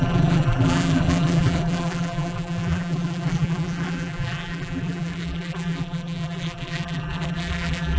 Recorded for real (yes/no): no